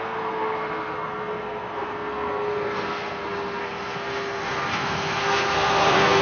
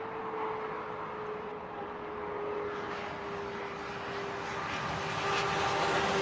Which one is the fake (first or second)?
first